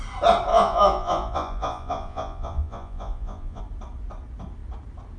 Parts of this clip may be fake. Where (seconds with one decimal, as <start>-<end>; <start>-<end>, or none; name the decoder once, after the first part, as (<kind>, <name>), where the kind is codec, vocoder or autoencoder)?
0.5-3.6 (vocoder, Vocos)